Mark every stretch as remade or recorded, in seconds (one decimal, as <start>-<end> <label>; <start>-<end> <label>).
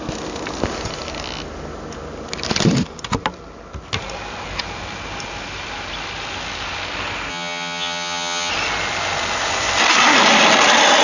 0.0-7.3 recorded; 7.3-8.5 remade; 8.5-11.0 recorded